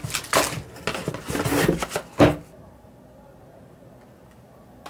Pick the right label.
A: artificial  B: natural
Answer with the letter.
B